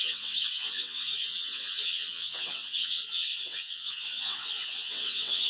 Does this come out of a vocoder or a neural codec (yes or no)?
yes